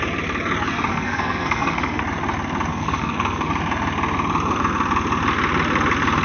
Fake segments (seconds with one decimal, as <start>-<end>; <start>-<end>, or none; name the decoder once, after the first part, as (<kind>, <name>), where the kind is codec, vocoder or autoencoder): 0.9-2.0 (codec, SNAC); 2.7-3.5